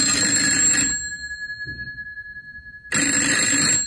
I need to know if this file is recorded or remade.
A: recorded